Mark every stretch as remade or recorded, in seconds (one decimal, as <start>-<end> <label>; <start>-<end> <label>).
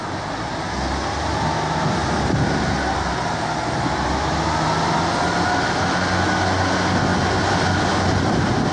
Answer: 0.0-8.7 recorded